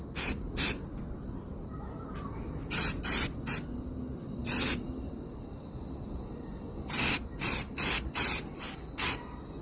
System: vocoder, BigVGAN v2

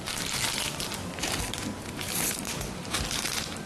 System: vocoder, BigVGAN v2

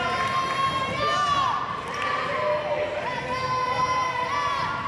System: none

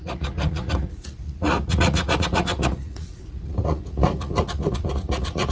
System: vocoder, Vocos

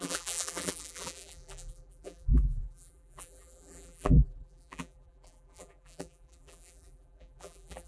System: vocoder, BigVGAN v2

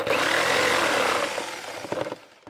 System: none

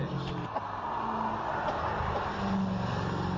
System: none